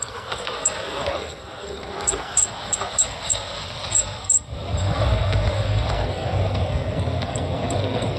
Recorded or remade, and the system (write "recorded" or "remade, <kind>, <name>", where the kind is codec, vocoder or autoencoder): remade, codec, SNAC